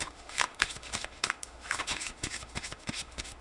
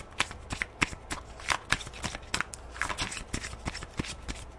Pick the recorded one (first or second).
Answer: second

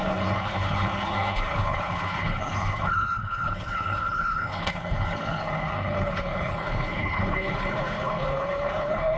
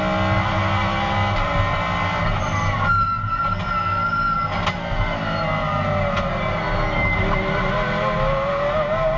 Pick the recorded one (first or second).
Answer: second